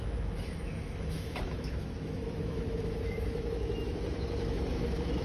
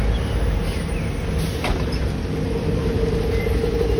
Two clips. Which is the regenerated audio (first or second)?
first